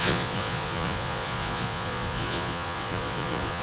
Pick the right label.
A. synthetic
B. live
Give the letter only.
A